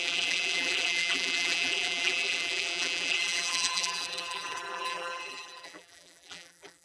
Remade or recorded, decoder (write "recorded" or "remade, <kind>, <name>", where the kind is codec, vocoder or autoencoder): remade, vocoder, BigVGAN v2